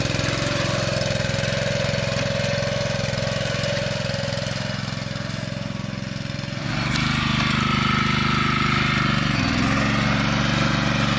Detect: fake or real real